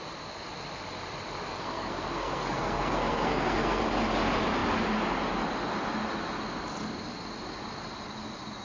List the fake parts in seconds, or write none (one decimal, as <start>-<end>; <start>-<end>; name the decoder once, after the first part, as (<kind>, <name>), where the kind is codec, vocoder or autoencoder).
1.5-3.8 (codec, SNAC)